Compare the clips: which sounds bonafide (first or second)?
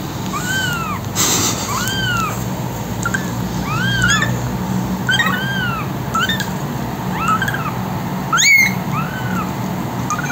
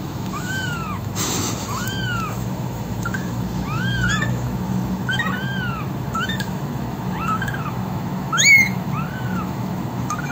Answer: first